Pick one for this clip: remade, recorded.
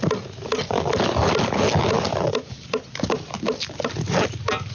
recorded